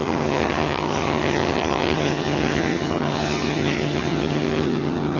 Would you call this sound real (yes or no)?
no